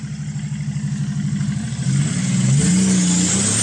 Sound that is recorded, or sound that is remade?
recorded